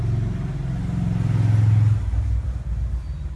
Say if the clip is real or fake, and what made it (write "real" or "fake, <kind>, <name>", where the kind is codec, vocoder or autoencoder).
real